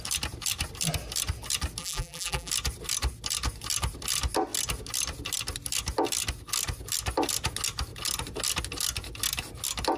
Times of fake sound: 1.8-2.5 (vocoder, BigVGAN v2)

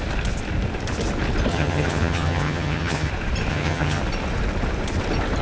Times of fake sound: 1.5-3.1 (vocoder, HiFi-GAN); 3.5-4.0

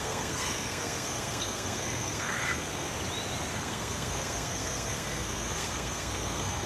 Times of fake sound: 0.0-2.9 (codec, SNAC); 3.5-6.7

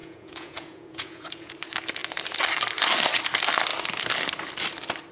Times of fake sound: 0.0-1.5 (vocoder, Vocos)

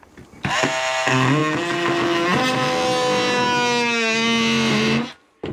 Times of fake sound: none